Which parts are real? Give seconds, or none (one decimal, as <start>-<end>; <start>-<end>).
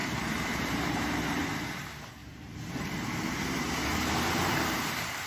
1.6-2.2; 3.4-3.9